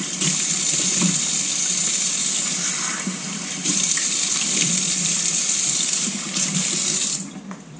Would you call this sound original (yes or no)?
no